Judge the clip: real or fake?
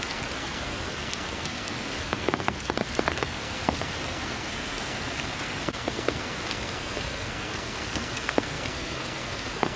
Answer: fake